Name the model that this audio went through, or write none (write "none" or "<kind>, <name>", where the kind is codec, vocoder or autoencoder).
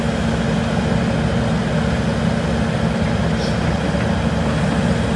none